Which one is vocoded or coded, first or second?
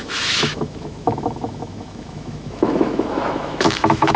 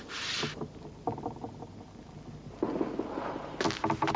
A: first